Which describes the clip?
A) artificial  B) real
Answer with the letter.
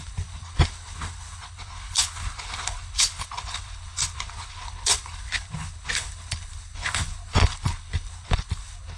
A